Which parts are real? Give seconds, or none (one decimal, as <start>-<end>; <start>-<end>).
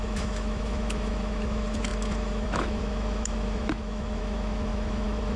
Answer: none